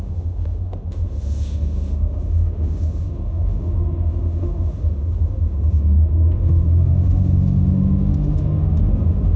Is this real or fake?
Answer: fake